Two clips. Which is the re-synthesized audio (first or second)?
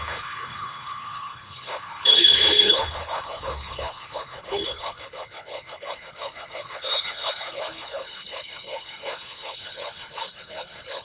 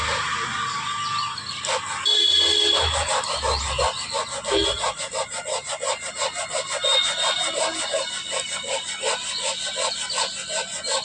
first